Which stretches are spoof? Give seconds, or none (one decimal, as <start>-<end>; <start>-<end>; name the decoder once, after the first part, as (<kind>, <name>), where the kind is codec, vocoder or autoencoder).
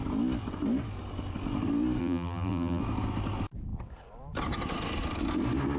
2.0-2.8 (vocoder, BigVGAN v2)